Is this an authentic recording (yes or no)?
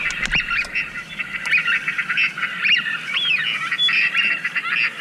yes